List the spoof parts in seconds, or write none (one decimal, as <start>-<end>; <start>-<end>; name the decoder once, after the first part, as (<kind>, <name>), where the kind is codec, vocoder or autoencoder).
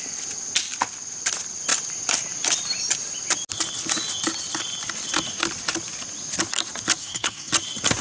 7.0-7.5 (codec, SNAC)